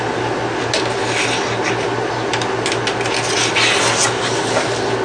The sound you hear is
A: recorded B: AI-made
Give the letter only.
A